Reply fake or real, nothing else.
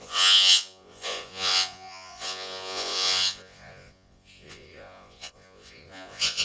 fake